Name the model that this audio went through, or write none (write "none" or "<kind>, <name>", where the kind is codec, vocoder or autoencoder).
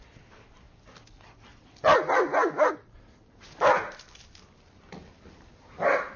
none